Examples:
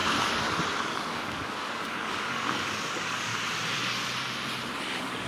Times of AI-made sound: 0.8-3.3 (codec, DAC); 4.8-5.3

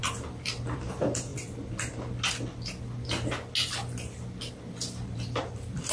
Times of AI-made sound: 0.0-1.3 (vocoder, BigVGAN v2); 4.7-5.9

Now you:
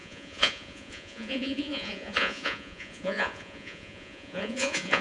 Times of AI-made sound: 0.0-5.0 (vocoder, Vocos)